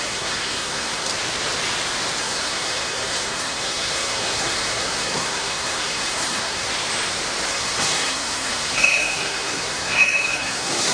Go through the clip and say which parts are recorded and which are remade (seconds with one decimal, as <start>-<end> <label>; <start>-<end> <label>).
0.0-1.1 remade; 1.1-2.2 recorded; 2.2-6.7 remade; 6.7-7.5 recorded; 7.5-10.9 remade